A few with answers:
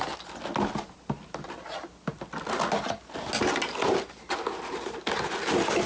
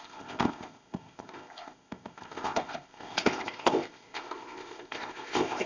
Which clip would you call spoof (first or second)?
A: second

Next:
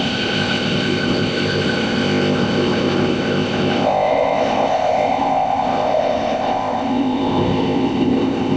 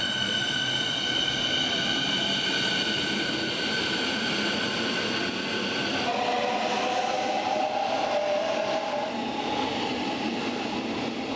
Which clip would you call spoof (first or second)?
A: first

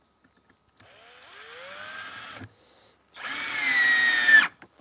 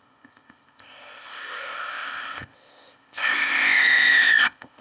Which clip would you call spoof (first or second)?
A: second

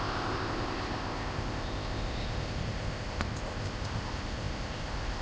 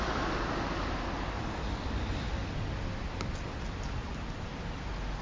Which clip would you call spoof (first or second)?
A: first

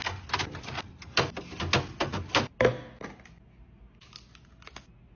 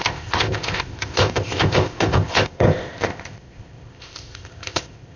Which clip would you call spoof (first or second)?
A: second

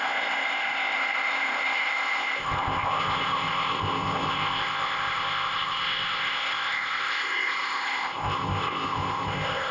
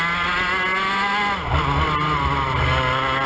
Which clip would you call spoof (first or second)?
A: first